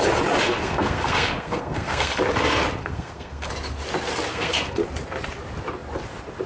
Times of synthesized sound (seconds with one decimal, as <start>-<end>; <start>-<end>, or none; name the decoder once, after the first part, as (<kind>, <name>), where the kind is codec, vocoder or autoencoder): 0.6-2.2 (codec, SNAC); 2.8-3.5; 4.3-4.8